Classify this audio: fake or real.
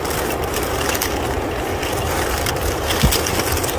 real